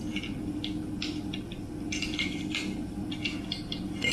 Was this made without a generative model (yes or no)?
yes